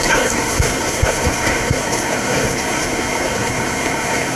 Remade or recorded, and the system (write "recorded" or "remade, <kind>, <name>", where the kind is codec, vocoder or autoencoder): remade, codec, SNAC